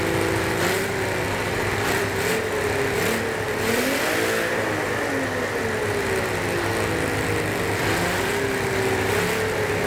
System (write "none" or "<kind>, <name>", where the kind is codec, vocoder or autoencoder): none